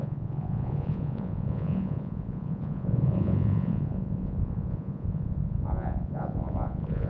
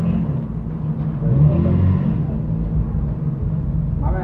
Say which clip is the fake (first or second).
first